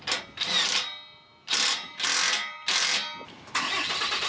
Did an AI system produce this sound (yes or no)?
no